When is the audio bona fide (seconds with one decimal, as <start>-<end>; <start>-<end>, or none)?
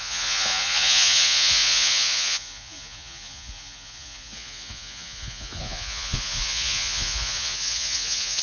none